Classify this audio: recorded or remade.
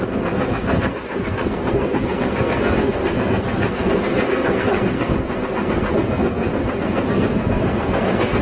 remade